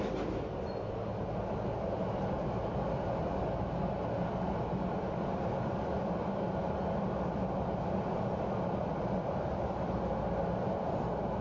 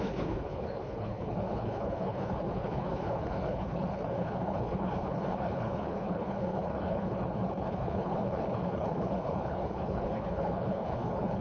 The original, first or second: first